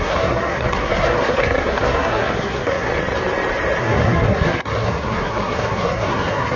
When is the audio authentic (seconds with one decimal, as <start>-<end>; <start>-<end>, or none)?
2.9-3.8